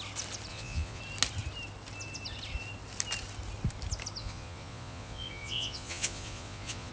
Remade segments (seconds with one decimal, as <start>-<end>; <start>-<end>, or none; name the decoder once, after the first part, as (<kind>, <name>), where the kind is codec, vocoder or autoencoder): 0.5-1.0 (vocoder, Vocos); 4.2-6.9